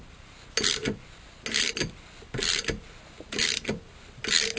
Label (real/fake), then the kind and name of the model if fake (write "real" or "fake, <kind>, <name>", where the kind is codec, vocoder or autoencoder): real